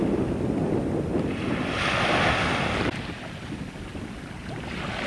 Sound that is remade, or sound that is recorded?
recorded